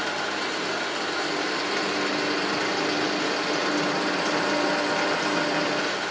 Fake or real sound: real